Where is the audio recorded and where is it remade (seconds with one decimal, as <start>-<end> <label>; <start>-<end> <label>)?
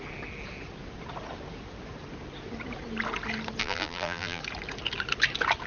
0.0-3.6 recorded; 3.6-4.4 remade; 4.4-5.7 recorded